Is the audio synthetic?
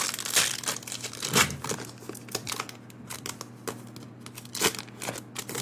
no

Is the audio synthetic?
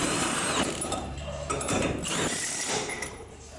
yes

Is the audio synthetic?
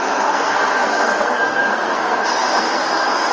yes